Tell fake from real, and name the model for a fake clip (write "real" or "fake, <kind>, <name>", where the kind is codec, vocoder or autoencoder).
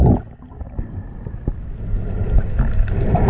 real